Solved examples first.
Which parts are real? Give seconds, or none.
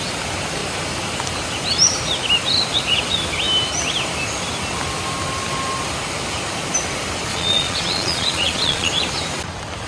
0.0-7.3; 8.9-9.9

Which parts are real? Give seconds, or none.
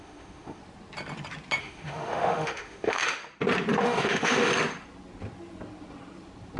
0.6-1.6; 3.2-3.8; 4.5-6.6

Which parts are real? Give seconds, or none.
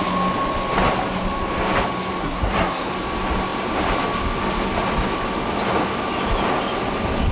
0.0-2.2; 2.9-7.3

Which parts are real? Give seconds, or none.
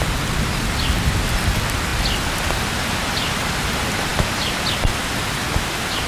0.0-6.1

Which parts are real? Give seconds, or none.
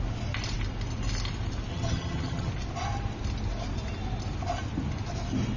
0.0-1.7; 2.5-5.6